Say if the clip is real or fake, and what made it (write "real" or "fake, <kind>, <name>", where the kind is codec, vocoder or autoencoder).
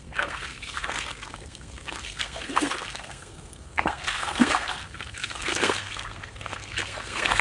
fake, codec, SNAC